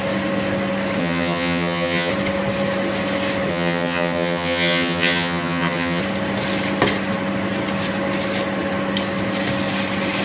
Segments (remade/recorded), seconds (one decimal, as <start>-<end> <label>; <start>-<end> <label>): 0.0-1.0 recorded; 1.0-2.1 remade; 2.1-3.5 recorded; 3.5-6.0 remade; 6.0-10.2 recorded